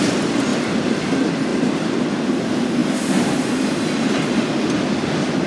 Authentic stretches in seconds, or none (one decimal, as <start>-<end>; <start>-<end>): 0.0-1.5; 2.1-5.5